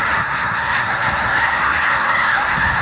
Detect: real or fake fake